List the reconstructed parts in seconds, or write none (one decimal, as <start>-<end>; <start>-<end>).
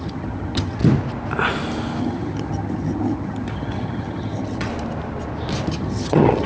0.0-0.8; 2.0-4.7; 5.7-6.5